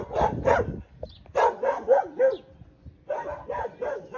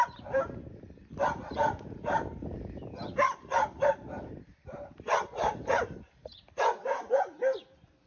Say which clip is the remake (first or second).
second